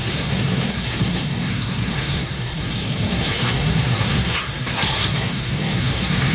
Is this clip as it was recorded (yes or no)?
no